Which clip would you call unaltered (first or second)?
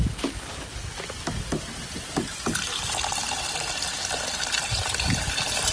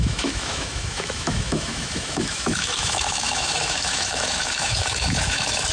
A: first